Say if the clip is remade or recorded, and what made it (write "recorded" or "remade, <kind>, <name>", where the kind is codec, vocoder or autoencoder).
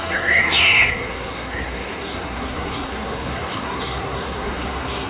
remade, codec, SNAC